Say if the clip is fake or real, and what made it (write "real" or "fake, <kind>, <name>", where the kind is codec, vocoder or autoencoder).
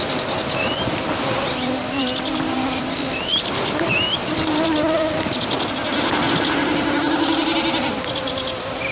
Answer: fake, vocoder, BigVGAN v2